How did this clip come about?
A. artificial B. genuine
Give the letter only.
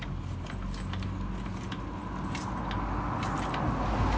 B